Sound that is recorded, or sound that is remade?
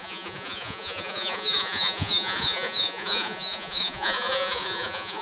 remade